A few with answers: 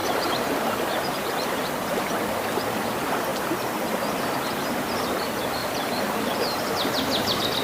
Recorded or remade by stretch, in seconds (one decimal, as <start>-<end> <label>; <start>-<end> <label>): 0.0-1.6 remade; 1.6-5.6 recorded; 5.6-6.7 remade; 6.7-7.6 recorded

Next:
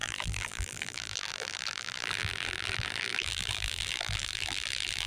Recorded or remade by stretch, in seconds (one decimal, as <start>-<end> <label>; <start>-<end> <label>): 0.0-5.1 remade

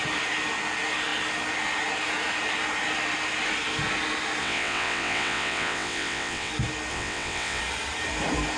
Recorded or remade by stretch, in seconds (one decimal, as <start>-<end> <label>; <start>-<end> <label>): 0.0-4.4 recorded; 4.4-6.5 remade; 6.5-6.9 recorded; 6.9-7.6 remade; 7.6-8.6 recorded